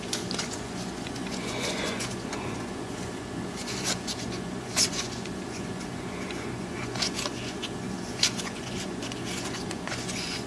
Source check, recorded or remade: remade